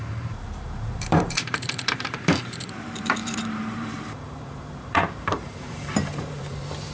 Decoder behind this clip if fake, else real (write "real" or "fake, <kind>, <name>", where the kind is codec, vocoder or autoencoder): fake, vocoder, BigVGAN v2